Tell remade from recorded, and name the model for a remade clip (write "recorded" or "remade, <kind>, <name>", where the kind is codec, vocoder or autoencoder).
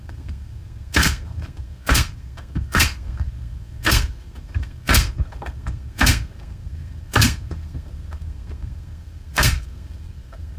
remade, codec, SNAC